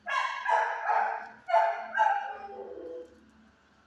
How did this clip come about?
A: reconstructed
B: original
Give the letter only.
B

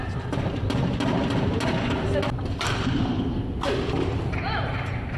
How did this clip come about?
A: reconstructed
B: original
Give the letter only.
B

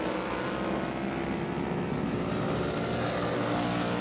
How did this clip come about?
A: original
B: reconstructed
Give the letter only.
A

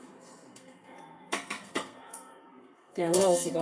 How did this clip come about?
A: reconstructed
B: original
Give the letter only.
A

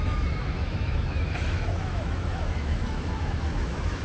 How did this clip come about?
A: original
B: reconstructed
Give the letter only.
B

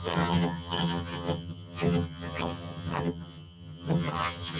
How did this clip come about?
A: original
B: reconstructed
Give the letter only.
B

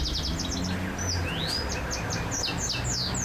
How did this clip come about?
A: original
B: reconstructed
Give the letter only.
A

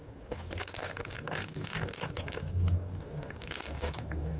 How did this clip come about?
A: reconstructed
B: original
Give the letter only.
A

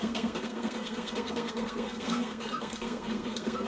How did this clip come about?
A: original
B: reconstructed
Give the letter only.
B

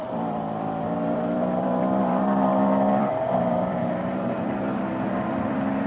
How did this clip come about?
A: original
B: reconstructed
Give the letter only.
B